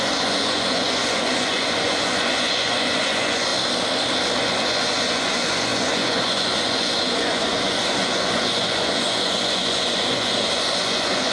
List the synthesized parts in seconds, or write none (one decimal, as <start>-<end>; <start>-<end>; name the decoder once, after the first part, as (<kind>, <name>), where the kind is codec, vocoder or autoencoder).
0.0-3.5 (vocoder, Vocos); 4.4-11.3